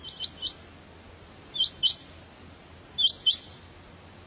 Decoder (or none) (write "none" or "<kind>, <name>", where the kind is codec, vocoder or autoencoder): none